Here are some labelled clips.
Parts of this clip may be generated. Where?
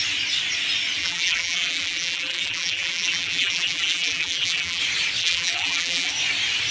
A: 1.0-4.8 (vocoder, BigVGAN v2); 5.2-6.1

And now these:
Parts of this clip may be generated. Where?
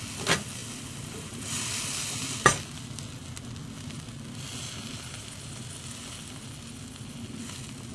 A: none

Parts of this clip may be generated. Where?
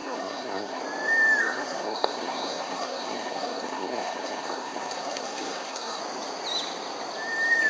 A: 0.0-0.8 (codec, SNAC); 1.4-6.0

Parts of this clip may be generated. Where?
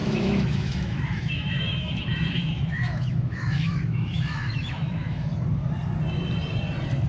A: 0.0-5.3 (autoencoder, DAC-VAE)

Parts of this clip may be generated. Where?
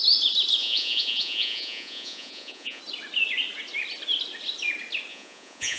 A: 0.6-2.8 (vocoder, Vocos); 5.1-5.8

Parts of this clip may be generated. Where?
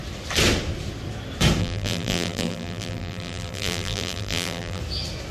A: 1.6-4.8 (vocoder, BigVGAN v2)